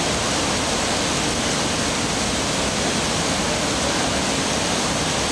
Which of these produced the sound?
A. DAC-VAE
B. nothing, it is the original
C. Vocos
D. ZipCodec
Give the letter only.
B